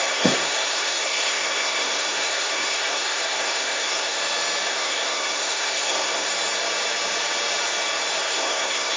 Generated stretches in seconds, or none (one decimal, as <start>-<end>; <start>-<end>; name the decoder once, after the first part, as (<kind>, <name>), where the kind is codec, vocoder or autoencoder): 0.0-4.2 (codec, SNAC); 4.7-6.3; 8.2-9.0

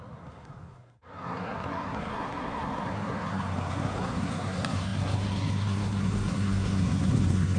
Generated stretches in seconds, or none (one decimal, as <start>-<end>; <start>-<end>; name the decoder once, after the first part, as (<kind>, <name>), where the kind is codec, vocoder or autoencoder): 0.0-7.6 (codec, SNAC)